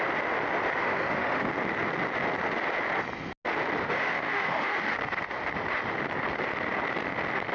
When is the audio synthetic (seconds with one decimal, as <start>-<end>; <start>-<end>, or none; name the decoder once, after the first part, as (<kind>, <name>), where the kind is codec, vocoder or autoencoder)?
0.8-1.5 (autoencoder, DAC-VAE); 3.8-4.8